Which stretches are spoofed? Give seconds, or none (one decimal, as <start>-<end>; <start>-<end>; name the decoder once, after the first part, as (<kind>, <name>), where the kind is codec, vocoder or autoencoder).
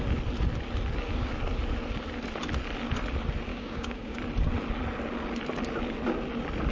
3.5-4.2 (codec, DAC)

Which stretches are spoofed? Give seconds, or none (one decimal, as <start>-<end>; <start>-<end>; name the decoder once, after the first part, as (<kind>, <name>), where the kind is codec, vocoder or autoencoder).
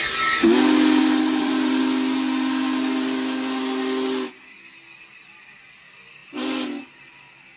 1.0-1.8 (vocoder, BigVGAN v2)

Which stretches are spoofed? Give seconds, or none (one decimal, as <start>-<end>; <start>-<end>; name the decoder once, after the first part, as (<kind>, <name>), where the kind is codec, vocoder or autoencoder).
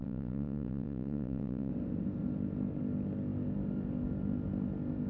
0.0-1.7 (vocoder, WaveNeXt)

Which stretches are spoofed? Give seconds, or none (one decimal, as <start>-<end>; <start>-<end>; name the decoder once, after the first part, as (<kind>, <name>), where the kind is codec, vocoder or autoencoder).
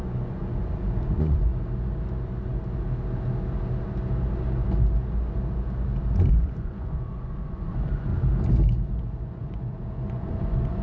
0.0-1.5 (vocoder, Vocos); 6.3-8.1; 9.0-10.8